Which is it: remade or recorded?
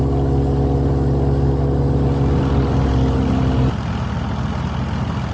recorded